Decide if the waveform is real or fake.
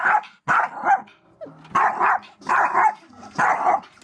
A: real